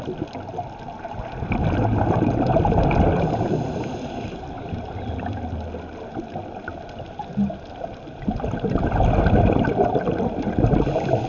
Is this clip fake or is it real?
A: real